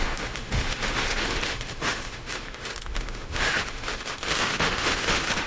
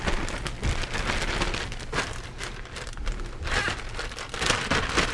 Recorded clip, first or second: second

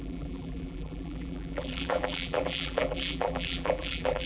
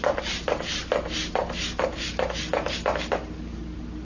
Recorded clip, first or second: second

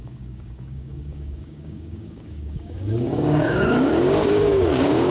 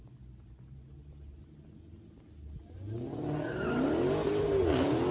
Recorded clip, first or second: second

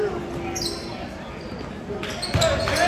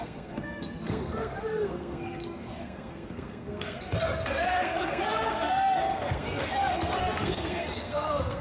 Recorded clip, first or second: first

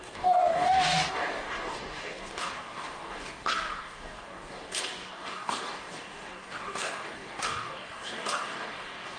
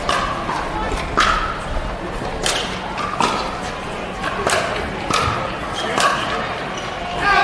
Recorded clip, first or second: second